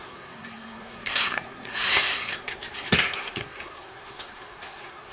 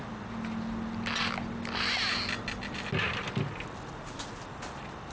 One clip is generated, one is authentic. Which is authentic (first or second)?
second